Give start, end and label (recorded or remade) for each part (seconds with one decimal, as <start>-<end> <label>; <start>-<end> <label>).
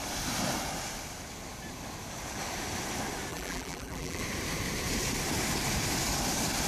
0.0-3.3 recorded; 3.3-4.2 remade; 4.2-6.7 recorded